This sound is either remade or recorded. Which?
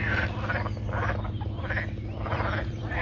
remade